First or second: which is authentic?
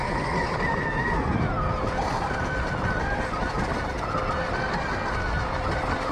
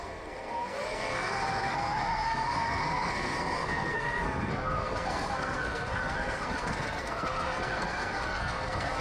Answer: first